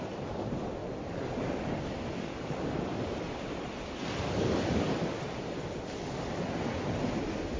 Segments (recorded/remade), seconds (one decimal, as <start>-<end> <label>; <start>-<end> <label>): 0.0-7.6 recorded